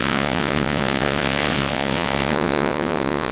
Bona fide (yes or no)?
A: no